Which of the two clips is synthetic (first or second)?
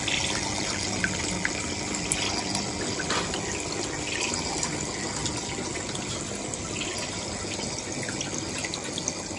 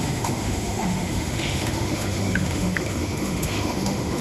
second